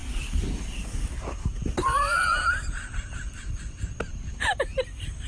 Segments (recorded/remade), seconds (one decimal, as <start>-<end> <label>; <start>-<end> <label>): 0.0-1.0 remade; 1.0-1.6 recorded; 1.6-4.6 remade; 4.6-5.3 recorded